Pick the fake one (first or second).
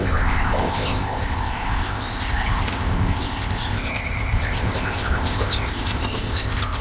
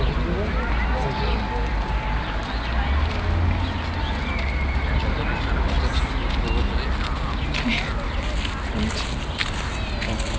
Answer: first